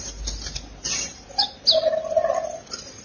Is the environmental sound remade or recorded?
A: recorded